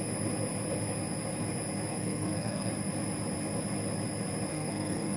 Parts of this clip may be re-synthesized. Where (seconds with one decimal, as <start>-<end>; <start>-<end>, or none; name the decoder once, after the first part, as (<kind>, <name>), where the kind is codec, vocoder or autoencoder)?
1.9-2.7 (codec, SNAC); 4.5-5.2